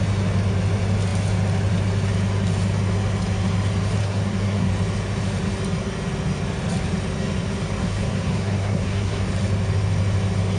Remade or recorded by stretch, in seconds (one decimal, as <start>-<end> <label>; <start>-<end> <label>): 0.0-4.0 recorded; 4.0-4.7 remade; 4.7-7.8 recorded; 7.8-9.3 remade; 9.3-10.6 recorded